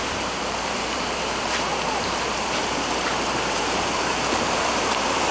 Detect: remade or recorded remade